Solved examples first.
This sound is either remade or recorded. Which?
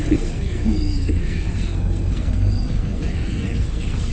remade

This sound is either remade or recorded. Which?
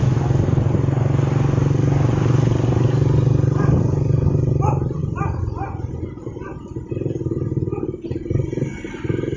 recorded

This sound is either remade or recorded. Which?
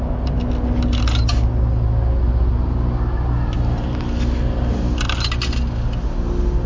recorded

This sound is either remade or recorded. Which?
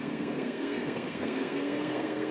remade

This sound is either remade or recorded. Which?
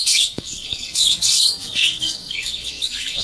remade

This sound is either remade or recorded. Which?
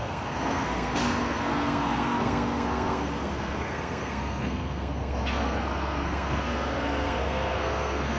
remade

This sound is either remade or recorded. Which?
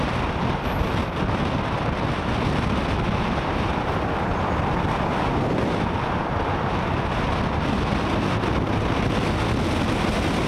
recorded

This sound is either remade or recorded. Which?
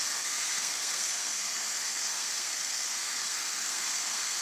remade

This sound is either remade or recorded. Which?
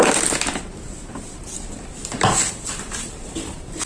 recorded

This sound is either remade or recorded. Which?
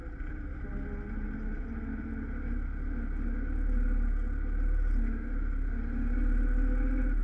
recorded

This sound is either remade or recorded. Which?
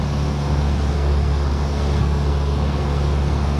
remade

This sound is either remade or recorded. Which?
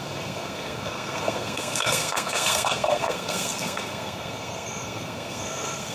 remade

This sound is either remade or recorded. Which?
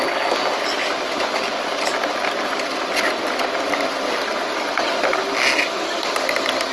recorded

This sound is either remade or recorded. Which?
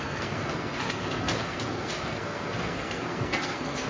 remade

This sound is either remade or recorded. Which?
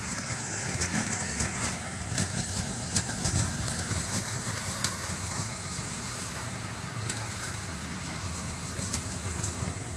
remade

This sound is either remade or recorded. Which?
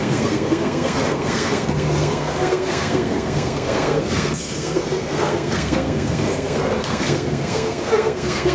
remade